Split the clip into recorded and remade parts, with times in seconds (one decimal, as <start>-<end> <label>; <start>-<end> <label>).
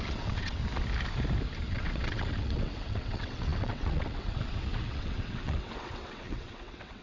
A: 0.0-0.6 remade; 0.6-1.7 recorded; 1.7-7.0 remade